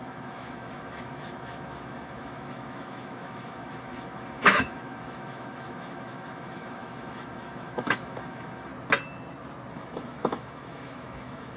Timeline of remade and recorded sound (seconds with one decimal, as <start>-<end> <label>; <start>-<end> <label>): 0.0-8.7 remade; 8.7-9.7 recorded; 9.7-11.6 remade